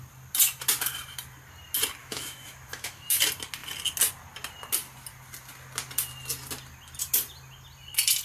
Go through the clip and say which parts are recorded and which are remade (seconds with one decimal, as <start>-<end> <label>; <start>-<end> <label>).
0.0-2.0 recorded; 2.0-3.2 remade; 3.2-8.2 recorded